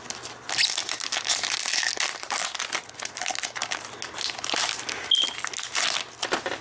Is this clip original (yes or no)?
yes